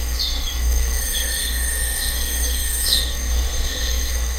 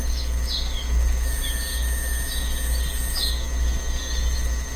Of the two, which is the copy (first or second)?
first